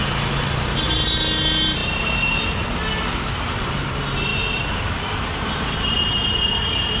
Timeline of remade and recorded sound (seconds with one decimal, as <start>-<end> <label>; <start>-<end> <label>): 0.0-1.8 recorded; 1.8-2.4 remade; 2.4-4.3 recorded; 4.3-7.0 remade